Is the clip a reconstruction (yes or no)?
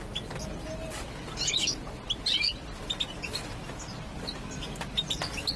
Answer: no